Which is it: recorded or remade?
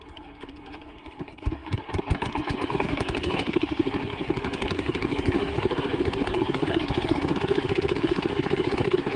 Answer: remade